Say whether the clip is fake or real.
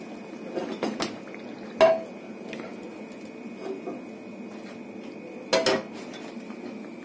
real